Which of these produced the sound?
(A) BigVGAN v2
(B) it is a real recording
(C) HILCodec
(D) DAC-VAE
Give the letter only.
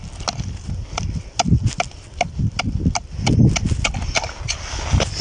B